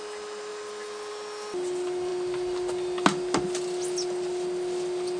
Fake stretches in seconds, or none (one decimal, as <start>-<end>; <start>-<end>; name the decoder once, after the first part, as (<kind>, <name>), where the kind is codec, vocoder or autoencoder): none